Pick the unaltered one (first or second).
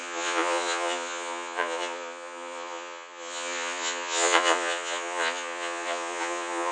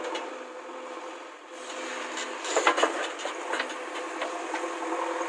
second